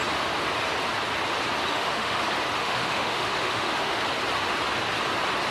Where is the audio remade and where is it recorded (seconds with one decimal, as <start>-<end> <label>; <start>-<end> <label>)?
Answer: 0.0-1.7 recorded; 1.7-2.2 remade; 2.2-2.6 recorded; 2.6-4.0 remade; 4.0-5.5 recorded